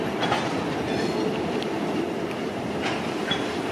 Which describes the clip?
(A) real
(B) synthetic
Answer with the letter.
B